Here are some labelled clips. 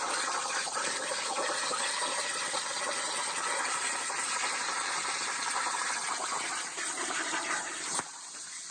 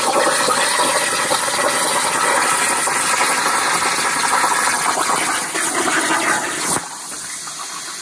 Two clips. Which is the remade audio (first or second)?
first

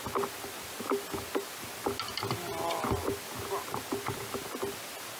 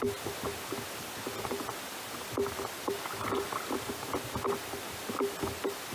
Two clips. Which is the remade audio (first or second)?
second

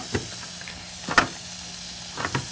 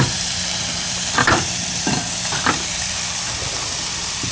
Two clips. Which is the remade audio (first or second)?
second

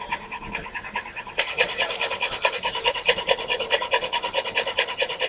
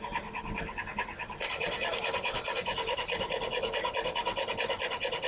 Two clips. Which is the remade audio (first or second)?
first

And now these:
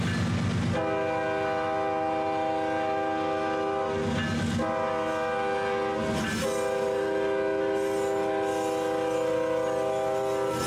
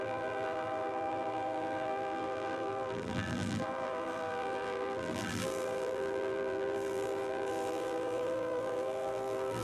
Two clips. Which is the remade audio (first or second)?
second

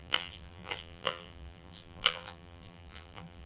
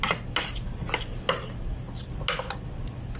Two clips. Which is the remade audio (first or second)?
first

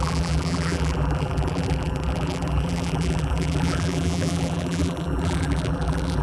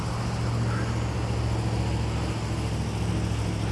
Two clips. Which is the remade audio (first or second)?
first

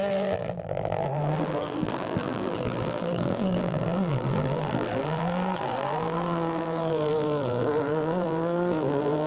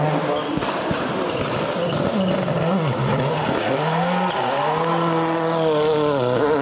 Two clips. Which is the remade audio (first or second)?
first